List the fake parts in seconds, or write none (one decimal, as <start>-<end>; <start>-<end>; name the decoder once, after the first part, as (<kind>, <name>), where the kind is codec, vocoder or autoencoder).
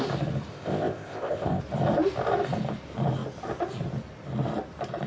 0.5-1.6 (codec, ZipCodec)